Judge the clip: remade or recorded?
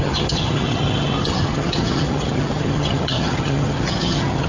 remade